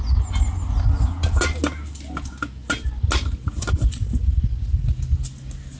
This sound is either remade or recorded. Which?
recorded